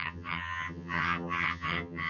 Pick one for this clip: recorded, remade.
remade